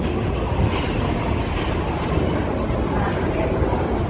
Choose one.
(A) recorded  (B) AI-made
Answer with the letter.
A